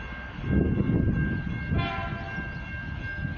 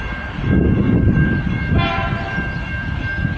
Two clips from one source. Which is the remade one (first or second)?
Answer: second